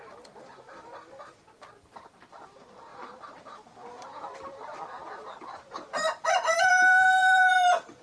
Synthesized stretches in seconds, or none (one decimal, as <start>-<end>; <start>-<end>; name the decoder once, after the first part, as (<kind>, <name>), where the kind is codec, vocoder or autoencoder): 0.0-8.0 (vocoder, BigVGAN v2)